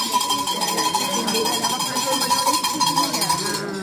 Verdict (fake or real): fake